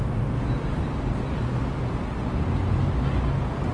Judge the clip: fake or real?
real